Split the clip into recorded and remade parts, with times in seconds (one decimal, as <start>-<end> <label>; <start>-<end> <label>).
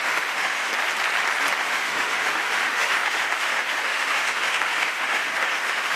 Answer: 0.0-0.7 remade; 0.7-1.6 recorded; 1.6-6.0 remade